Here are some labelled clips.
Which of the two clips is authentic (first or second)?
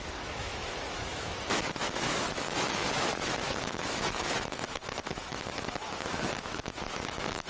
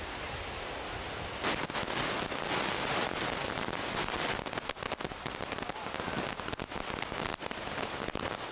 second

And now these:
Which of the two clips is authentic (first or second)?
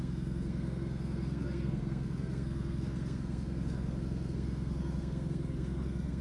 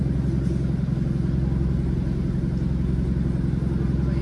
second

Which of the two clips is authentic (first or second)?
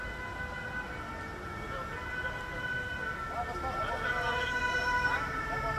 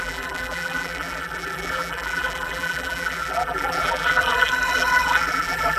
first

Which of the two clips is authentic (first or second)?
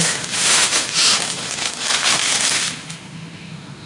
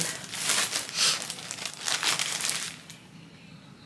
second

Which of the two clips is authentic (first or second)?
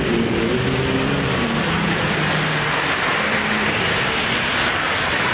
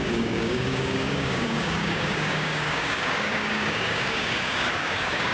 first